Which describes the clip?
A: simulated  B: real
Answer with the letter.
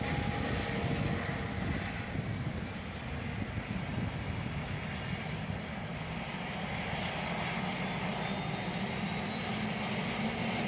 B